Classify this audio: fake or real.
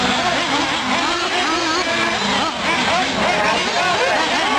real